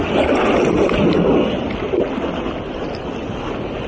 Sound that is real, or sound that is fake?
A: real